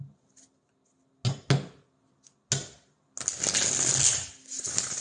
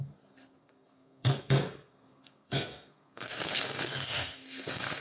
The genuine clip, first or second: first